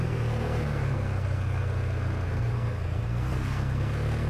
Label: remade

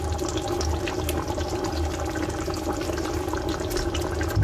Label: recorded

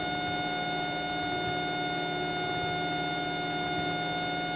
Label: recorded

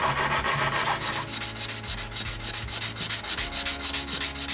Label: recorded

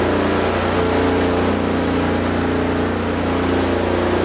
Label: recorded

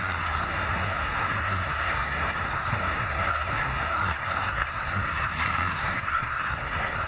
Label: remade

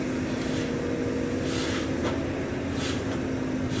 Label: recorded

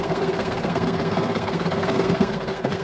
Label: remade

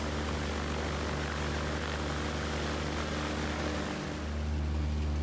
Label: recorded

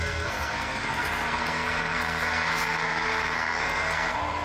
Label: remade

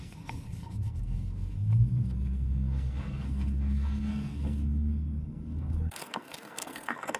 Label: remade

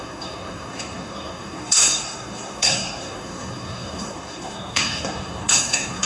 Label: remade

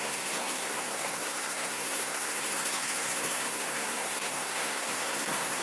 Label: remade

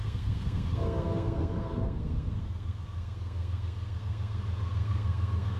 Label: remade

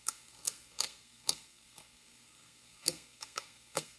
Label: remade